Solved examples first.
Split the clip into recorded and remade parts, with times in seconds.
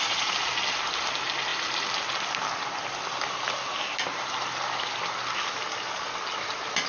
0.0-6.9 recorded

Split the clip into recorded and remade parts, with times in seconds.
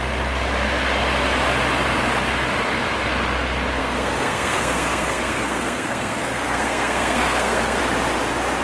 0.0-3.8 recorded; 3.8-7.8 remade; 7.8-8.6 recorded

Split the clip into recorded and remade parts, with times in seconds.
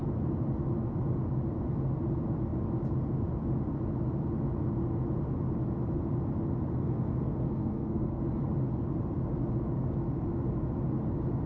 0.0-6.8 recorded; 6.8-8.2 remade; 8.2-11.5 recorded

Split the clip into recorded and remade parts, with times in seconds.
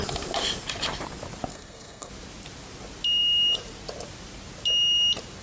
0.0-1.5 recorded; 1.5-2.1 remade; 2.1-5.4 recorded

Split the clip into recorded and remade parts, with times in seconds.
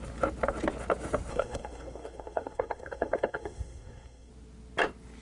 0.0-1.3 recorded; 1.3-4.3 remade; 4.3-5.2 recorded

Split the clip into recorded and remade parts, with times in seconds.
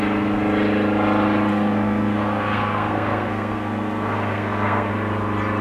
0.0-1.5 recorded; 1.5-4.9 remade; 4.9-5.6 recorded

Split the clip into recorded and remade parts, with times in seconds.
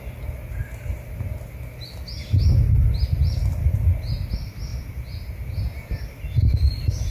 0.0-7.1 recorded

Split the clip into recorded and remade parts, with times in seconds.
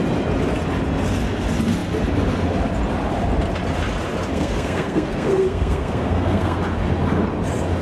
0.0-4.3 recorded; 4.3-6.6 remade; 6.6-7.8 recorded